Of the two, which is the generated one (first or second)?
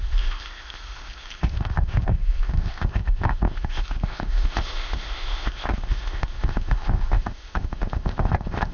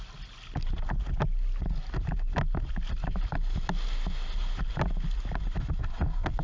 first